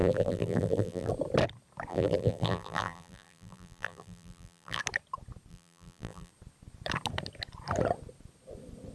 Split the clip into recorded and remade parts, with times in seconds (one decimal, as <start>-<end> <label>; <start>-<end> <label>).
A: 0.0-1.1 remade; 1.1-1.9 recorded; 1.9-4.8 remade; 4.8-5.5 recorded; 5.5-6.3 remade; 6.3-8.9 recorded